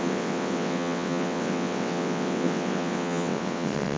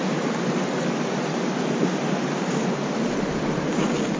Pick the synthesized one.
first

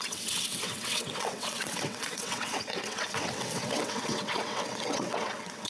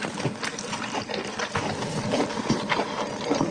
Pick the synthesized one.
first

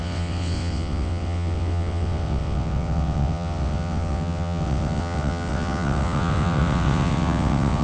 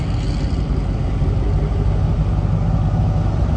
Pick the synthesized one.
first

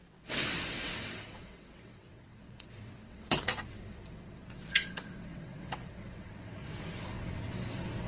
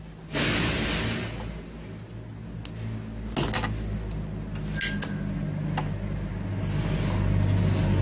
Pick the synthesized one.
first